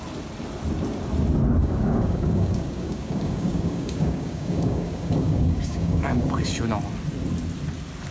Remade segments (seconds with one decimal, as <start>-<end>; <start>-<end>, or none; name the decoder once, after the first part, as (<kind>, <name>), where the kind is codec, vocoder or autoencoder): 1.6-6.5 (codec, DAC)